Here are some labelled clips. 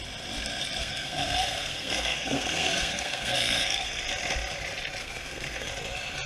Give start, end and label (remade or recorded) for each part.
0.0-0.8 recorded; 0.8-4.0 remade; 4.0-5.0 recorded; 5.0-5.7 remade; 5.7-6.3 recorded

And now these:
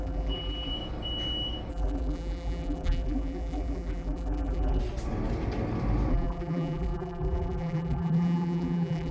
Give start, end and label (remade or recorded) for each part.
0.0-0.7 remade; 0.7-1.7 recorded; 1.7-4.8 remade; 4.8-6.1 recorded; 6.1-9.1 remade

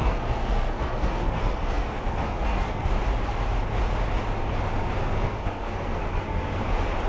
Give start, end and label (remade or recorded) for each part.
0.0-3.0 remade; 3.0-5.0 recorded; 5.0-6.6 remade; 6.6-7.1 recorded

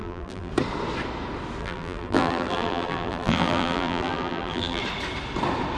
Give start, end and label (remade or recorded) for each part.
0.0-0.5 remade; 0.5-1.6 recorded; 1.6-4.8 remade; 4.8-5.8 recorded

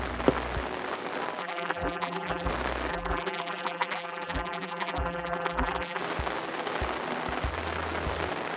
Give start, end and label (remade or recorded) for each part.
0.0-1.4 recorded; 1.4-2.5 remade; 2.5-2.9 recorded; 2.9-6.0 remade; 6.0-8.6 recorded

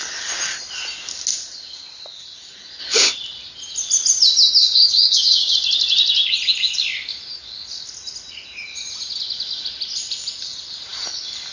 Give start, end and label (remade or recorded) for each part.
0.0-4.6 recorded; 4.6-5.5 remade; 5.5-11.5 recorded

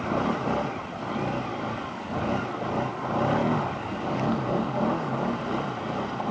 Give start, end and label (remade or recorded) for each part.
0.0-1.5 recorded; 1.5-2.4 remade; 2.4-3.4 recorded; 3.4-5.4 remade; 5.4-6.3 recorded

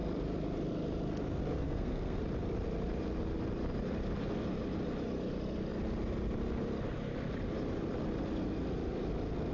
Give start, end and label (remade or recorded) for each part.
0.0-1.5 recorded; 1.5-2.2 remade; 2.2-9.5 recorded